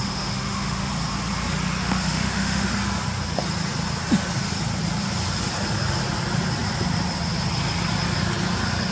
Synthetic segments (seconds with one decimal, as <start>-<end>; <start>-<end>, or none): 0.0-0.9; 1.8-2.7